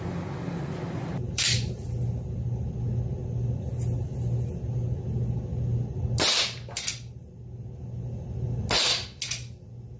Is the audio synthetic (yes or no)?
no